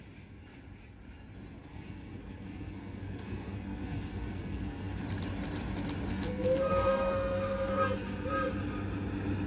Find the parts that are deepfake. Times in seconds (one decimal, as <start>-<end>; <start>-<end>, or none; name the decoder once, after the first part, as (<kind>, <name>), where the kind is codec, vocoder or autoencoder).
1.7-5.0 (codec, SNAC); 6.1-8.3